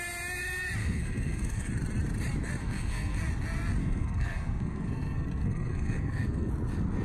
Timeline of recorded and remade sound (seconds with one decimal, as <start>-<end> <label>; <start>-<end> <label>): 0.0-0.8 recorded; 0.8-1.7 remade; 1.7-2.6 recorded; 2.6-3.2 remade; 3.2-3.8 recorded; 3.8-6.5 remade; 6.5-7.0 recorded